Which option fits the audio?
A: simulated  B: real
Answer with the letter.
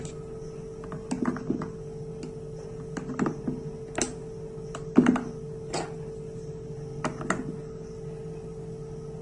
B